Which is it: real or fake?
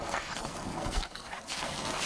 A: fake